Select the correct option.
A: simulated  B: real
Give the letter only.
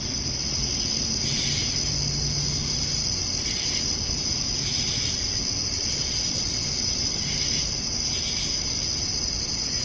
A